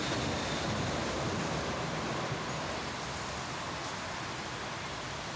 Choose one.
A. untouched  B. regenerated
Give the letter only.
A